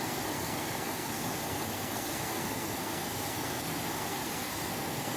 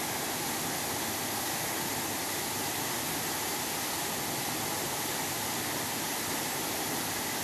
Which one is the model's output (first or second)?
first